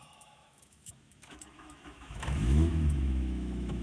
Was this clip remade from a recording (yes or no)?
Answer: yes